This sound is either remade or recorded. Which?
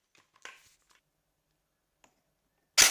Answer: recorded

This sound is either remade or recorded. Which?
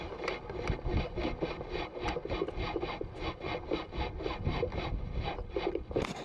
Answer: recorded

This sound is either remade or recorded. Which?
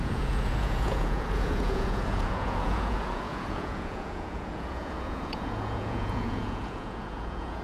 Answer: remade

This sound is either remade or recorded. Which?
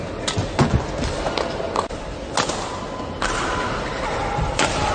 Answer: recorded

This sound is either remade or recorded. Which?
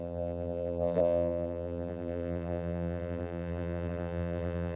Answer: remade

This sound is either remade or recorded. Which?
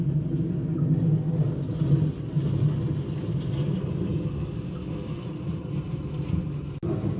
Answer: recorded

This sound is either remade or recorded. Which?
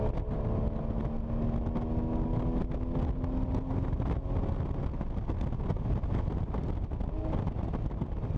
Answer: recorded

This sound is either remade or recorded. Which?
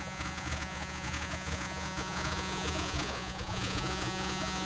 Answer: remade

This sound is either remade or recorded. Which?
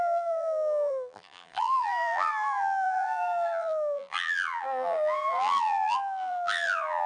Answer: remade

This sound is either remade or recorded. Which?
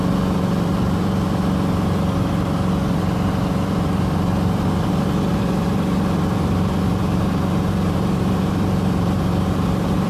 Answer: remade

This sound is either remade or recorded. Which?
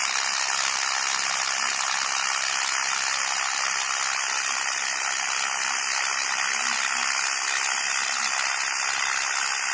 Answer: recorded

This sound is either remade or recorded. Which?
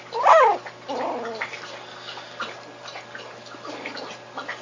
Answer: recorded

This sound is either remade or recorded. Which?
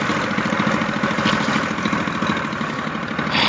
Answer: recorded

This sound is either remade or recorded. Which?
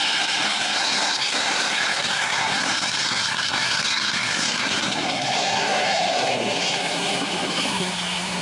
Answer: remade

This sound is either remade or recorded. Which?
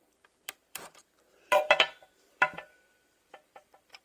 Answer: remade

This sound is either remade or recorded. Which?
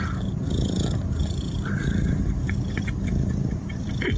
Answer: remade